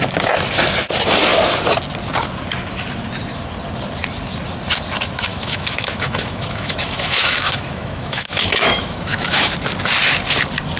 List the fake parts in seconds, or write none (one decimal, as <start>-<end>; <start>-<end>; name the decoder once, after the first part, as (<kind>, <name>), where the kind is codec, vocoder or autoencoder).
5.3-9.5 (autoencoder, DAC-VAE)